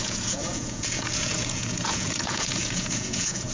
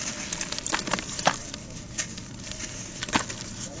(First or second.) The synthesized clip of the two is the first